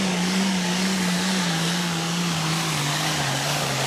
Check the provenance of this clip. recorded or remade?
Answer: remade